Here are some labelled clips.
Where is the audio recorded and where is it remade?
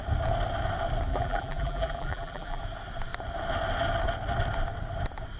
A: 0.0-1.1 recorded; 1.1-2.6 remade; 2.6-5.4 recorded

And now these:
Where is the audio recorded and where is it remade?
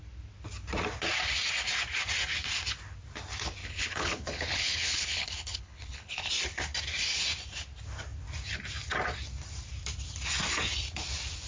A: 0.0-3.6 recorded; 3.6-6.3 remade; 6.3-11.5 recorded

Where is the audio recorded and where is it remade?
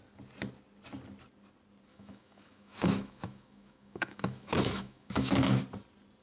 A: 0.0-1.9 recorded; 1.9-5.6 remade; 5.6-6.2 recorded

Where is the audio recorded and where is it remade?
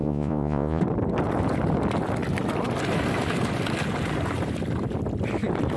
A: 0.0-0.8 remade; 0.8-5.8 recorded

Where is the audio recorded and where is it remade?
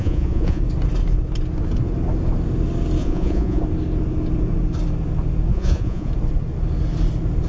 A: 0.0-0.6 remade; 0.6-3.0 recorded; 3.0-3.6 remade; 3.6-5.5 recorded; 5.5-6.1 remade; 6.1-7.5 recorded